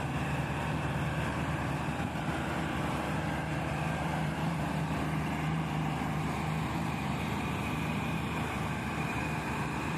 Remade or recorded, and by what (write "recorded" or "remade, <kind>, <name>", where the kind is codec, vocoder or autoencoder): remade, vocoder, BigVGAN v2